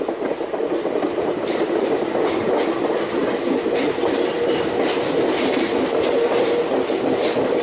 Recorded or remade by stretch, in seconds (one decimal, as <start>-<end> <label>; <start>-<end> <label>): 0.0-7.6 recorded